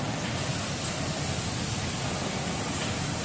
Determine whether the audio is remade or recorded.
recorded